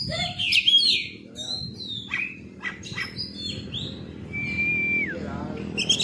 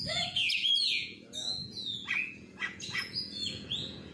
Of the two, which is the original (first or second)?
first